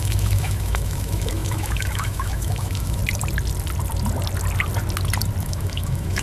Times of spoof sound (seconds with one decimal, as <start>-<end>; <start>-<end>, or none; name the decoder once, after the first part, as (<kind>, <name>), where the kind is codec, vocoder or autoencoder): 0.0-3.0 (autoencoder, DAC-VAE); 5.4-6.2